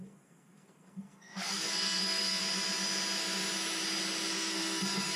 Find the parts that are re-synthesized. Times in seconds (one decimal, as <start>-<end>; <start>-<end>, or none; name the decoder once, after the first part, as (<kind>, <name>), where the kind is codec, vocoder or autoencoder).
0.0-2.4 (codec, SNAC); 4.3-5.2